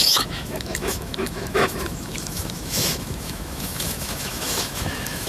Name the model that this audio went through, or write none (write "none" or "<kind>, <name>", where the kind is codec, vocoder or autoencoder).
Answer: autoencoder, DAC-VAE